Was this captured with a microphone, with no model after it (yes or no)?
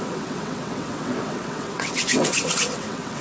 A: no